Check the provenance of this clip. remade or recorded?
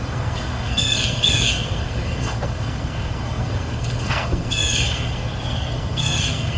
remade